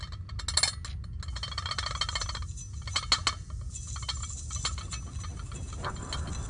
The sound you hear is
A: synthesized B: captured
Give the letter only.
B